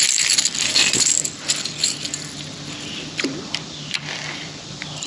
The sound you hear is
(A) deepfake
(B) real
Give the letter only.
A